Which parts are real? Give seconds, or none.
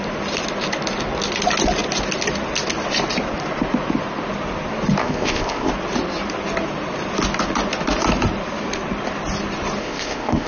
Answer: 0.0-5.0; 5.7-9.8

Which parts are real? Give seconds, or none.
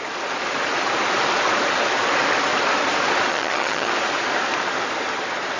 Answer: 0.0-3.3; 3.9-5.6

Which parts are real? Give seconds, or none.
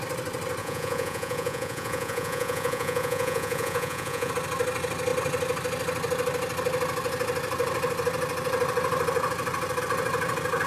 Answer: 0.0-0.6; 4.3-10.7